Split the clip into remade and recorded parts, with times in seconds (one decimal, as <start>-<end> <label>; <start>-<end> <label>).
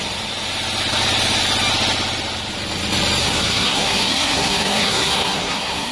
0.0-3.2 recorded; 3.2-5.9 remade